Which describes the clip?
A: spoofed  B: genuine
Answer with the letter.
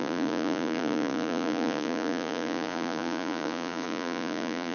A